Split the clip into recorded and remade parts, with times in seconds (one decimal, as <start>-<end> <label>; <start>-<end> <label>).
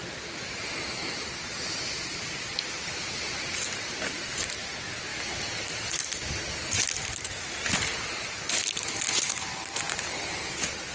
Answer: 0.0-10.9 recorded